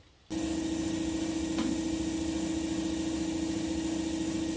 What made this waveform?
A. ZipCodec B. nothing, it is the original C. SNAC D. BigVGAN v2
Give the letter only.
B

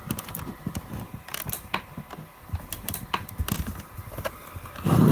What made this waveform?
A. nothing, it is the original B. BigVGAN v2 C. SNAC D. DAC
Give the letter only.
B